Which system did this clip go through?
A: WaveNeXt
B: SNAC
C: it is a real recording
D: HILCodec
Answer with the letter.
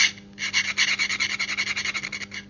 C